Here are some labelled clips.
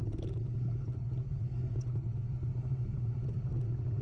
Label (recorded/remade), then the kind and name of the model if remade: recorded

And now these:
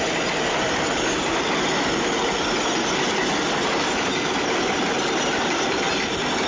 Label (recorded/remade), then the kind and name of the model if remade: recorded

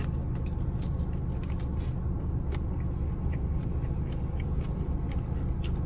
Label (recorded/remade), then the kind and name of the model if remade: recorded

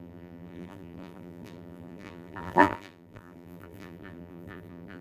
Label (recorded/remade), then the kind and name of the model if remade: remade, vocoder, BigVGAN v2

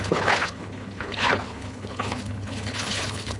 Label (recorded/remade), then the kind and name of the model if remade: remade, codec, HILCodec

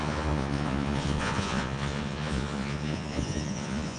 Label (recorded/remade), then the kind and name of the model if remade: remade, vocoder, Vocos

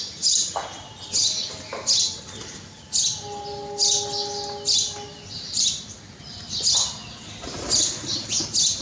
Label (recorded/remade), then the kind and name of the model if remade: recorded